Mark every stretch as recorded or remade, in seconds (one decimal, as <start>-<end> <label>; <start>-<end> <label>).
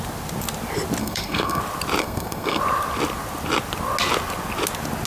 0.0-1.0 recorded; 1.0-1.6 remade; 1.6-2.0 recorded; 2.0-2.6 remade; 2.6-5.1 recorded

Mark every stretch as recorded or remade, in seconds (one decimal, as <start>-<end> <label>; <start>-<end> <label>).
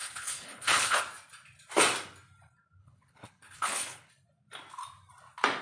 0.0-1.0 remade; 1.0-2.8 recorded; 2.8-4.1 remade; 4.1-5.6 recorded